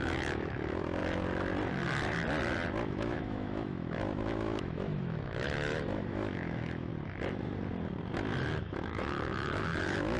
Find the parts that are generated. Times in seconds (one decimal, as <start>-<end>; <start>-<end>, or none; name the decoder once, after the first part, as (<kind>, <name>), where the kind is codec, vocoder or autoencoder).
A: 0.0-1.0 (autoencoder, DAC-VAE); 2.9-6.9; 8.6-10.2